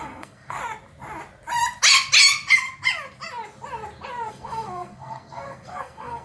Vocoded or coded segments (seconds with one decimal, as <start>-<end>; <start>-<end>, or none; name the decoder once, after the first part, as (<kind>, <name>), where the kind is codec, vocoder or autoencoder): 0.0-0.6 (codec, SNAC); 4.3-6.2